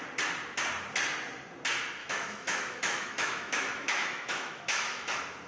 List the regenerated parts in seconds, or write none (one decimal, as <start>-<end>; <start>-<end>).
2.0-5.1